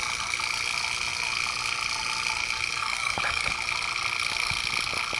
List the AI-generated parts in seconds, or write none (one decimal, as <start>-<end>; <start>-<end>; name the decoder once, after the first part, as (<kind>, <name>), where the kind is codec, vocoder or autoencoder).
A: 2.8-3.5 (codec, DAC)